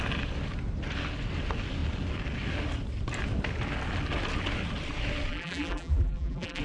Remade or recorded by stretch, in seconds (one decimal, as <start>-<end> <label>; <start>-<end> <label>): 0.0-5.3 recorded; 5.3-6.6 remade